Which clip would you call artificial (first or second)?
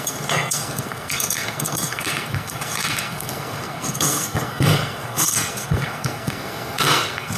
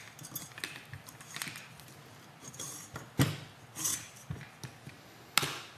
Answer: first